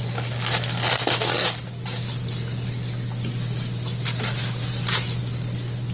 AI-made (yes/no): no